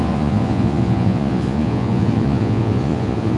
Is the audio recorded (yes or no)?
no